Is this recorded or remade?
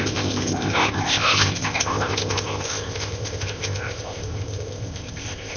remade